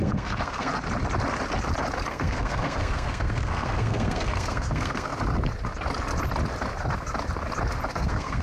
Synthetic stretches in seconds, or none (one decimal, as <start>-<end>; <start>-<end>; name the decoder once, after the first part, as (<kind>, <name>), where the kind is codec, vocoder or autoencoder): 0.0-0.7 (codec, SNAC); 2.1-5.1; 7.9-8.4